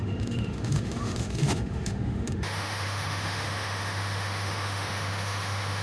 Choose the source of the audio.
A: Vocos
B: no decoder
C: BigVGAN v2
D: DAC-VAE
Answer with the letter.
D